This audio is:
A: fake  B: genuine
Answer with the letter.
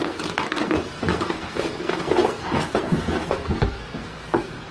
A